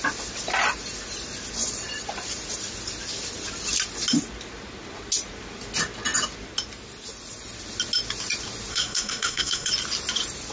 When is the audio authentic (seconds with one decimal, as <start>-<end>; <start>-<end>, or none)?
0.0-8.7; 9.7-10.5